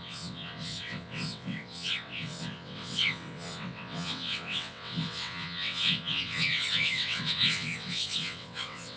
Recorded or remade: remade